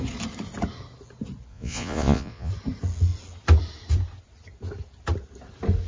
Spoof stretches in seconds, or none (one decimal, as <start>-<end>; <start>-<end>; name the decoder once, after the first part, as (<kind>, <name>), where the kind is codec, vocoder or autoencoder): 1.5-2.5 (vocoder, Vocos)